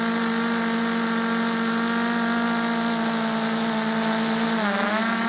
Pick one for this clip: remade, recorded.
recorded